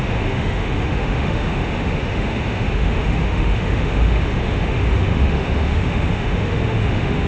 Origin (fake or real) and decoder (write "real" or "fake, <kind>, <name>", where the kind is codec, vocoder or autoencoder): fake, autoencoder, DAC-VAE